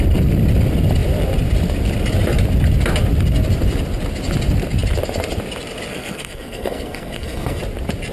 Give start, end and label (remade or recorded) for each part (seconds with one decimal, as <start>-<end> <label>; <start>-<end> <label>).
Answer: 0.0-5.9 recorded; 5.9-7.6 remade; 7.6-8.1 recorded